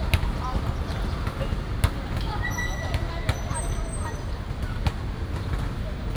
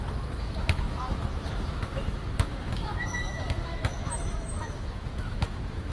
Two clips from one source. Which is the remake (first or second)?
second